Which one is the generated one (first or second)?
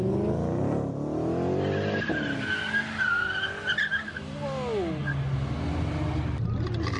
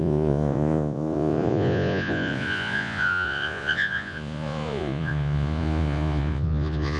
second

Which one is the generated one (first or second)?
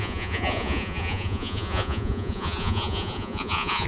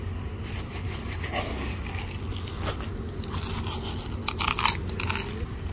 first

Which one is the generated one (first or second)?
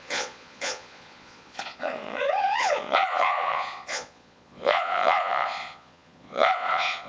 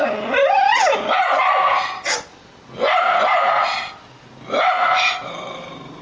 first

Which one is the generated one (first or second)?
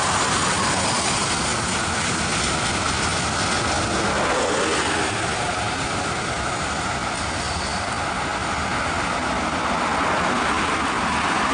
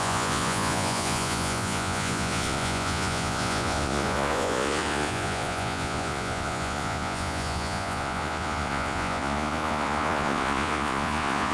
second